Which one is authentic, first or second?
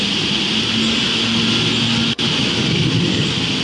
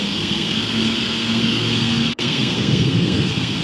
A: first